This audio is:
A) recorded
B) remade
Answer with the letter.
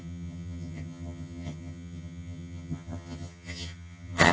B